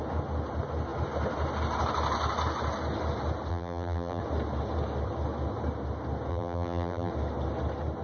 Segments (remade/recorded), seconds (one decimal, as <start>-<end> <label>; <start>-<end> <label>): 0.0-3.5 recorded; 3.5-4.2 remade; 4.2-6.3 recorded; 6.3-7.1 remade; 7.1-8.0 recorded